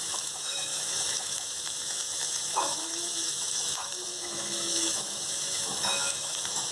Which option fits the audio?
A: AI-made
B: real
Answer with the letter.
A